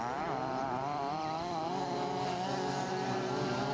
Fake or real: real